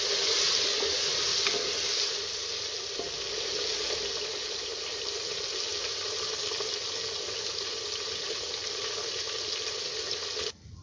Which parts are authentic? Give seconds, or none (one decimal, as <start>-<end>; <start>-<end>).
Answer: 0.0-10.8